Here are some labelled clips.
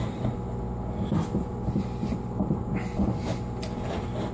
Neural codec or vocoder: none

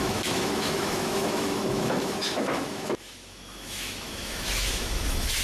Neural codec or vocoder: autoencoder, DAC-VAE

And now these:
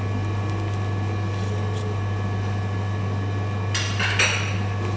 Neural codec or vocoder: none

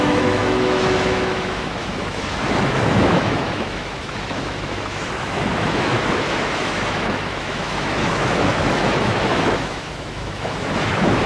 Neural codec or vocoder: autoencoder, DAC-VAE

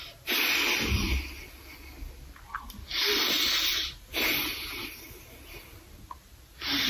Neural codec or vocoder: none